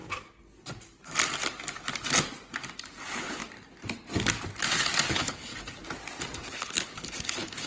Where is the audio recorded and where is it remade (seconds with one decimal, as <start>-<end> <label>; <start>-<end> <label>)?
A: 0.0-3.0 recorded; 3.0-3.4 remade; 3.4-5.1 recorded; 5.1-5.5 remade; 5.5-6.5 recorded; 6.5-7.7 remade